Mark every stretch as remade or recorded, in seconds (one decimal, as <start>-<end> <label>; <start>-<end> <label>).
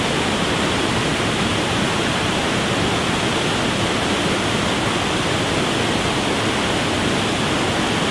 0.0-1.5 recorded; 1.5-2.4 remade; 2.4-8.1 recorded